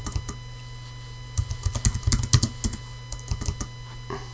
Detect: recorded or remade recorded